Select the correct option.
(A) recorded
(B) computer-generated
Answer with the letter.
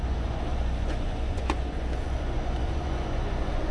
B